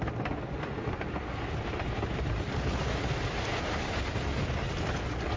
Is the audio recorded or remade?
recorded